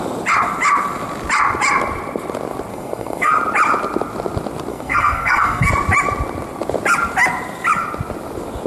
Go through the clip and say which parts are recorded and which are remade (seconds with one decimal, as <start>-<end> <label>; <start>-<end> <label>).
0.0-2.7 recorded; 2.7-3.3 remade; 3.3-4.7 recorded; 4.7-5.7 remade; 5.7-8.7 recorded